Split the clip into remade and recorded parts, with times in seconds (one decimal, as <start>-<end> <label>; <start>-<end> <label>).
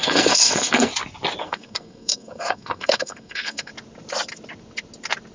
0.0-0.9 remade; 0.9-1.4 recorded; 1.4-3.7 remade; 3.7-5.3 recorded